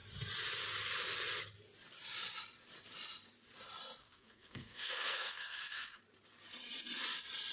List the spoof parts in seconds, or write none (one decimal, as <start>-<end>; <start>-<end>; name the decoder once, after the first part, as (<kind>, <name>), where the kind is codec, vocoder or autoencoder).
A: 4.0-6.0 (codec, SNAC)